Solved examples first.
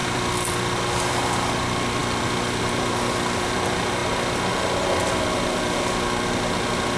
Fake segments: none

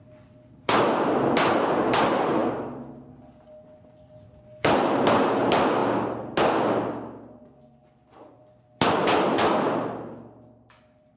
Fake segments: none

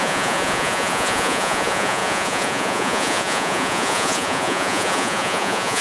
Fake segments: 0.0-5.8 (vocoder, Vocos)

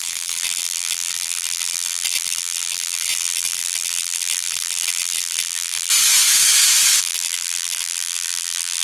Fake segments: 0.0-5.9 (vocoder, BigVGAN v2); 7.0-8.8

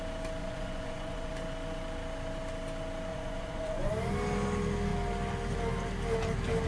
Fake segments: 0.4-1.3 (vocoder, Vocos); 3.1-3.9